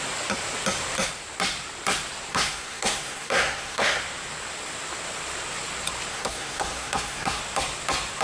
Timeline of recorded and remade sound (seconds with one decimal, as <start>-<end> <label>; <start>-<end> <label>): 0.0-2.3 recorded; 2.3-4.0 remade; 4.0-6.1 recorded; 6.1-7.4 remade; 7.4-8.2 recorded